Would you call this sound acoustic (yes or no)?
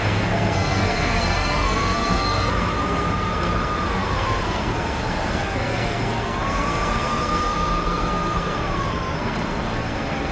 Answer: no